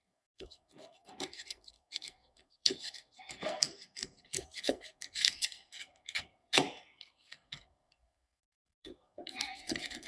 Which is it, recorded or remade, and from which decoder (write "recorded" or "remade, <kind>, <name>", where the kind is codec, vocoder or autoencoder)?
remade, codec, SNAC